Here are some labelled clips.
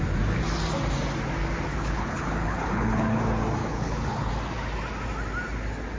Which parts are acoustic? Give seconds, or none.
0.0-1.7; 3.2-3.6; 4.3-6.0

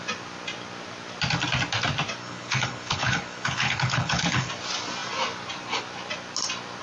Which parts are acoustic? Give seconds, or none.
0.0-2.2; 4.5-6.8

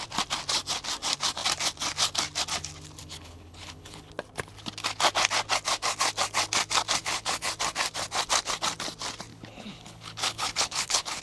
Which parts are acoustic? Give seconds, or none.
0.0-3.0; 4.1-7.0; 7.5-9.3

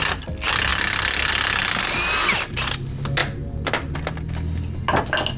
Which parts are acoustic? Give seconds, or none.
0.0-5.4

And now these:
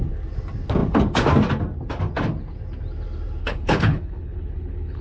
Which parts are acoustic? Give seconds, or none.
0.0-3.4